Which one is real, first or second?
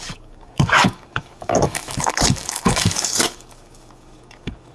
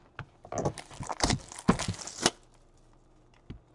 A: second